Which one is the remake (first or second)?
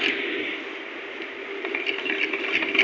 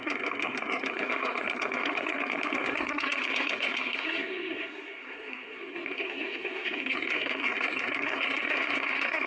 second